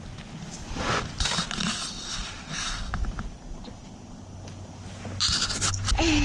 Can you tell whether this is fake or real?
real